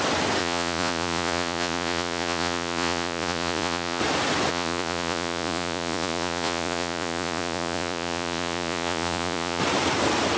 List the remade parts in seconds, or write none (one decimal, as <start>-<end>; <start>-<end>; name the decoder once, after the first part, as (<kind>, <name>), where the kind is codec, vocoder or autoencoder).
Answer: 0.4-4.0 (vocoder, Vocos); 4.5-9.6